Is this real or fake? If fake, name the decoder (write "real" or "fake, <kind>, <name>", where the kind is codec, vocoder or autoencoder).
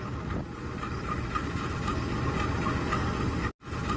real